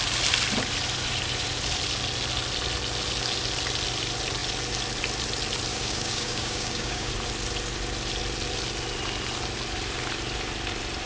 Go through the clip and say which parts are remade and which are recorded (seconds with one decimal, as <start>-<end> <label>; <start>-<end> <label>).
0.0-5.7 recorded; 5.7-7.1 remade; 7.1-11.1 recorded